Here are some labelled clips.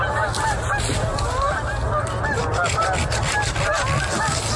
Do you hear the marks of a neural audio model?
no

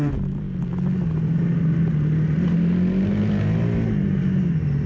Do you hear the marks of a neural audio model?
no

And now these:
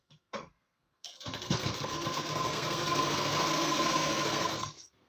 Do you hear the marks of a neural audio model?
yes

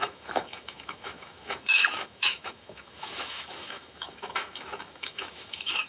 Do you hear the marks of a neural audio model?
yes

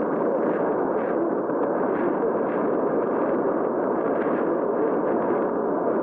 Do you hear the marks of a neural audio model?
no